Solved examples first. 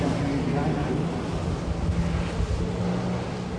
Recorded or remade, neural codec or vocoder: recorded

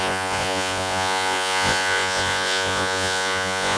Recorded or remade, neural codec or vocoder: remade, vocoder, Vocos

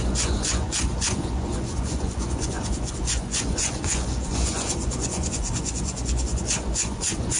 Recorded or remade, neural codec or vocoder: remade, vocoder, Vocos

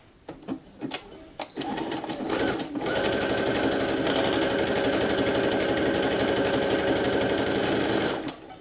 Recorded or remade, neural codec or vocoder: recorded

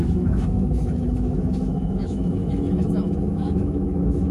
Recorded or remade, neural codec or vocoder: remade, autoencoder, DAC-VAE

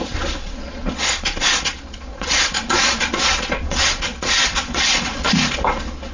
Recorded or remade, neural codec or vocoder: remade, vocoder, Vocos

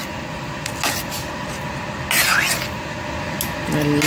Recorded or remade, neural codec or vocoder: recorded